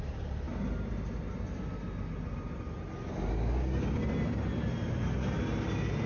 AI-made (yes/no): no